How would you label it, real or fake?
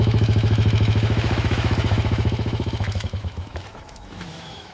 fake